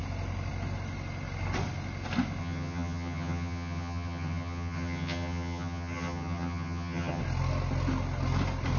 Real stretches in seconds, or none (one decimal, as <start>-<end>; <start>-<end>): 0.0-2.4; 7.2-8.8